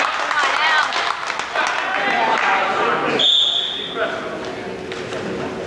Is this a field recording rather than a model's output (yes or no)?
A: yes